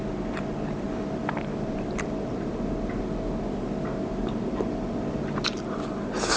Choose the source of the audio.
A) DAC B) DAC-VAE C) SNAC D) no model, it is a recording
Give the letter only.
D